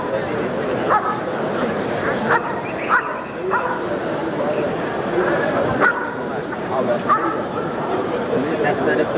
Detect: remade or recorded remade